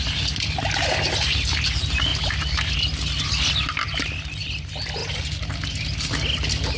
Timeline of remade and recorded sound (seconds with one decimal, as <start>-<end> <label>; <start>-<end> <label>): 0.0-6.8 recorded